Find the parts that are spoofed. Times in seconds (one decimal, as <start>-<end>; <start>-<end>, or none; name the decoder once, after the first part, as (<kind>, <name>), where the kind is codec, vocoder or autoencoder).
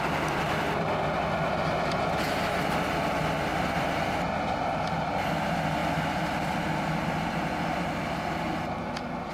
none